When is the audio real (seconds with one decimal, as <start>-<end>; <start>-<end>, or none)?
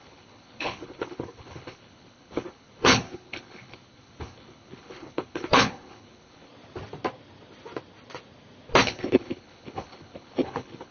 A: 6.5-8.8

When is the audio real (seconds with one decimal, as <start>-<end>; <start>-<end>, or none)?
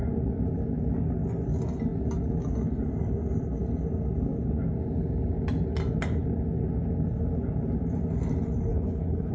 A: 0.0-8.7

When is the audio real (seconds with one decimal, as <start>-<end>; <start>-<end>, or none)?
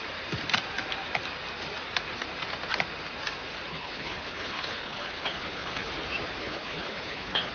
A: 0.0-3.7; 5.9-6.4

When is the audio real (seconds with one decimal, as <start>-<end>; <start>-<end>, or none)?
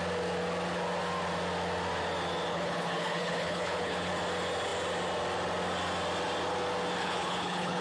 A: 0.0-2.5; 4.1-7.0